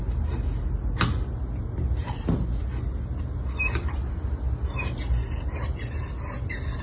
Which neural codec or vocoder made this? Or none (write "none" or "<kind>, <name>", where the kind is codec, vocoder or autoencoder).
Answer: none